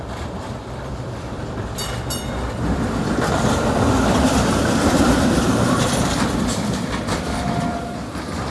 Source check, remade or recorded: remade